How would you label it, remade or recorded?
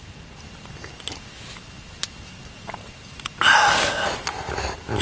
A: recorded